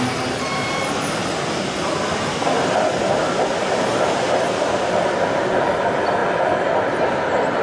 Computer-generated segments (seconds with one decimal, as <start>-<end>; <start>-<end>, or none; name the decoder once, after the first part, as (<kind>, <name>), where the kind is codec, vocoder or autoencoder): 0.0-1.2 (vocoder, BigVGAN v2); 3.8-6.2; 6.9-7.6